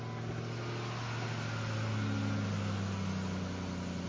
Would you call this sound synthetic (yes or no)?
no